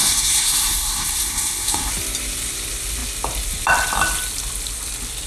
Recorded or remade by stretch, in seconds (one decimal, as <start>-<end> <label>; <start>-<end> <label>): 0.0-1.9 remade; 1.9-5.3 recorded